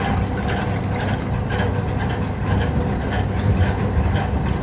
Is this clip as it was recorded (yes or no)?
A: yes